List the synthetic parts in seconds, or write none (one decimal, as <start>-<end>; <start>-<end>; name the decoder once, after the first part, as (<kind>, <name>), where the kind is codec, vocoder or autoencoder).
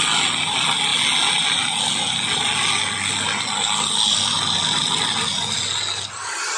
none